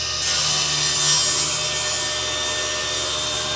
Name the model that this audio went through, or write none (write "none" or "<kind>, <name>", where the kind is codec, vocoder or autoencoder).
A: none